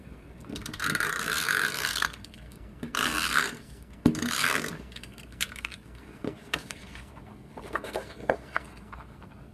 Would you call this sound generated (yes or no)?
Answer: yes